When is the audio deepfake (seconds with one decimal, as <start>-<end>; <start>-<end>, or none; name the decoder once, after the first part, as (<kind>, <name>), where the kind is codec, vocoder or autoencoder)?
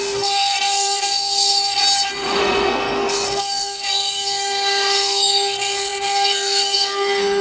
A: 0.0-1.8 (codec, SNAC); 2.4-7.4